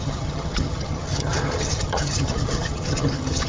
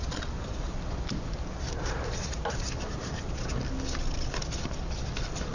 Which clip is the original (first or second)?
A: second